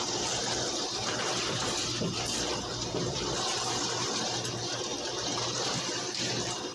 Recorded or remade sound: remade